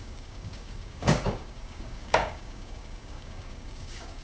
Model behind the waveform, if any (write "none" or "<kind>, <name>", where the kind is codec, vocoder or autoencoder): codec, DAC